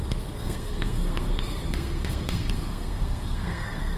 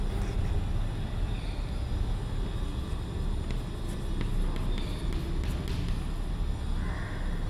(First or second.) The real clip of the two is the second